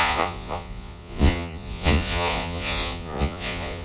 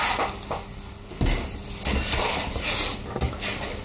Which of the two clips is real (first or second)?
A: second